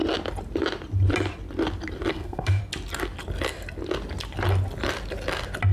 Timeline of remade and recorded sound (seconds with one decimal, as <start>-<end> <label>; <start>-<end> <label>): 0.0-2.1 recorded; 2.1-2.6 remade; 2.6-5.7 recorded